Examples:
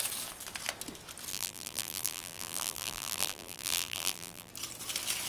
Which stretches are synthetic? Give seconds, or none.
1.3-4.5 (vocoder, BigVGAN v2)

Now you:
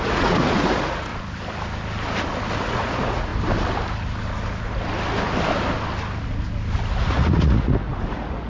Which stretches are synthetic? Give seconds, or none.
0.0-1.1 (vocoder, Vocos); 2.6-3.3; 7.0-8.5

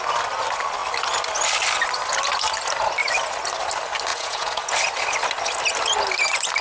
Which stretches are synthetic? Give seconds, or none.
4.1-4.7 (vocoder, Vocos)